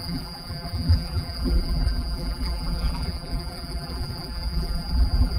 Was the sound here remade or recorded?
remade